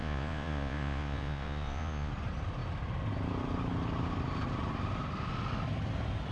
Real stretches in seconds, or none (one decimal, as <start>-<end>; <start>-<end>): 2.1-6.3